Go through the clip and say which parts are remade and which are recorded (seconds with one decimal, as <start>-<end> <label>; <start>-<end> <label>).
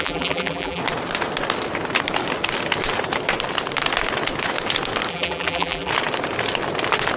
0.0-0.8 remade; 0.8-5.1 recorded; 5.1-5.9 remade; 5.9-7.2 recorded